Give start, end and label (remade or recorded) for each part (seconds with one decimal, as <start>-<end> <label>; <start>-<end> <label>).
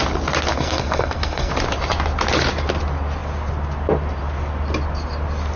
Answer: 0.0-0.5 recorded; 0.5-1.5 remade; 1.5-5.6 recorded